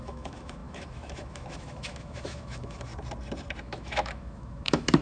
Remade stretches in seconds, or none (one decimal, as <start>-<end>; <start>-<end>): 0.0-2.9; 3.6-5.0